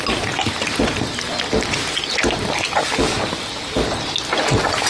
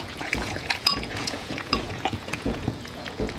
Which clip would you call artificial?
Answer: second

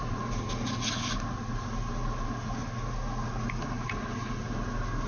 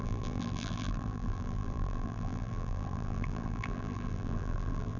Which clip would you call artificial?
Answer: second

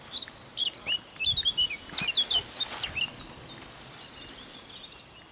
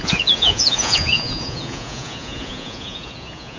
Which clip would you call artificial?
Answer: second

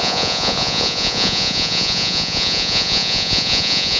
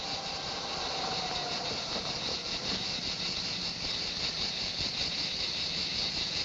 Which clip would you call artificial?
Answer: first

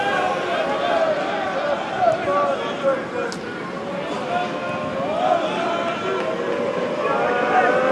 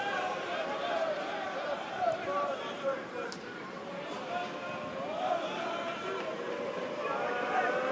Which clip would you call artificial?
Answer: second